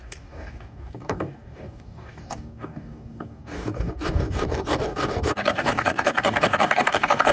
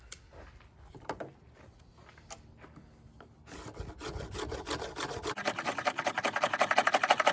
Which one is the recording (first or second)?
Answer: second